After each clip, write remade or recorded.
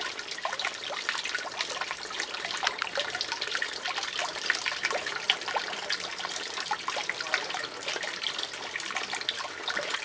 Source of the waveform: recorded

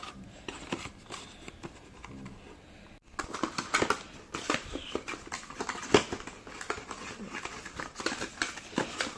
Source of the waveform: recorded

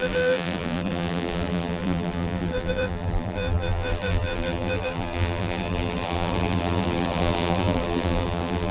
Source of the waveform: remade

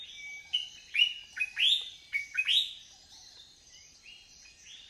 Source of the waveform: recorded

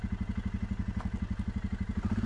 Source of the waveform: recorded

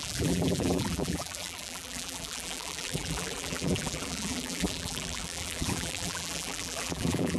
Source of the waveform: remade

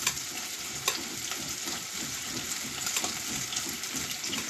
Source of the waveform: recorded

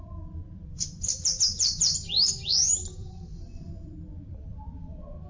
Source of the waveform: remade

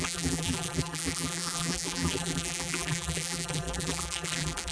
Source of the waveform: remade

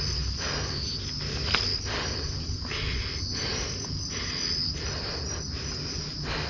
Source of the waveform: recorded